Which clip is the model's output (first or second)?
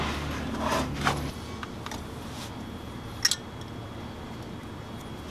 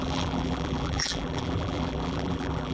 second